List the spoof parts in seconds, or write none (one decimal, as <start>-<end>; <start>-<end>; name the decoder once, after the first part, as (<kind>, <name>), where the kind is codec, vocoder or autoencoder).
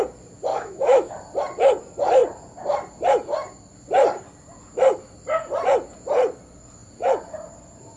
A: 0.5-1.1 (autoencoder, DAC-VAE)